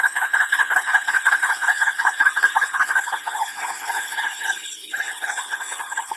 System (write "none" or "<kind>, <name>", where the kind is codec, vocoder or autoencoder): codec, HILCodec